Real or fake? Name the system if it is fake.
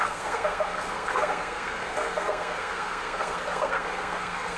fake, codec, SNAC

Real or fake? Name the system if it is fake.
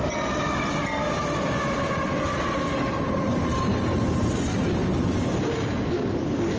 real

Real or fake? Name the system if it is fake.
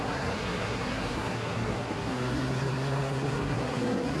fake, codec, SNAC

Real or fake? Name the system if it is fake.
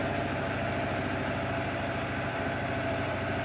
real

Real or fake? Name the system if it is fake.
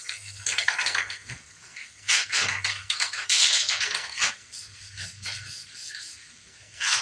fake, codec, SNAC